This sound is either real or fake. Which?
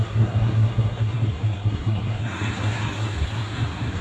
fake